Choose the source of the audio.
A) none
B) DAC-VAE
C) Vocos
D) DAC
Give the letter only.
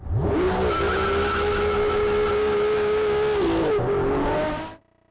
A